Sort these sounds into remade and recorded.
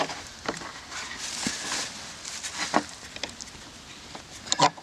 recorded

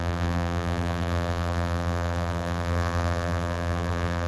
remade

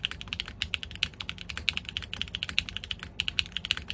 recorded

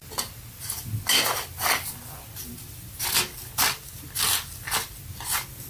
recorded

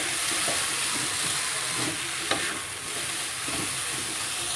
recorded